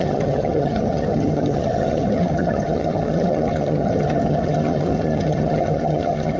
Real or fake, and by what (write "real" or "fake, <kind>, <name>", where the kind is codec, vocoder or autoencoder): fake, vocoder, HiFi-GAN